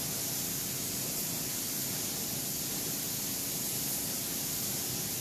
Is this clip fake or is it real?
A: real